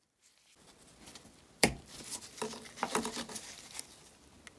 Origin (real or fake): real